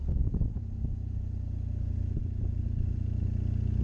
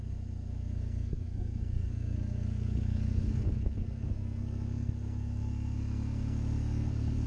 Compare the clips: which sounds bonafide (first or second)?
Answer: first